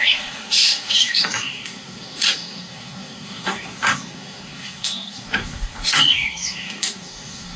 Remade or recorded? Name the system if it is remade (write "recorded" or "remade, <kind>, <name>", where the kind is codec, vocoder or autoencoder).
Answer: remade, codec, SNAC